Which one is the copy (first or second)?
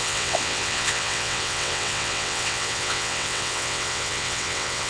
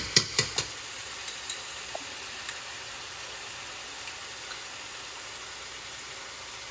first